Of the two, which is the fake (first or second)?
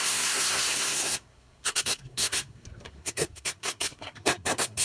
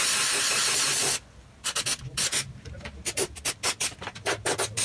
first